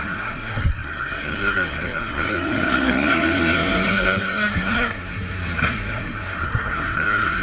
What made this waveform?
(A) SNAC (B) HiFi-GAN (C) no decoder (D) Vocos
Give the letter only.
A